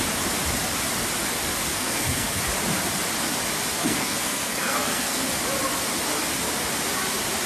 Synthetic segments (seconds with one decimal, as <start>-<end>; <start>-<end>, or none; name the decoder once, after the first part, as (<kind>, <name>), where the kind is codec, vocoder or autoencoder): 1.7-2.4 (codec, SNAC); 3.8-5.2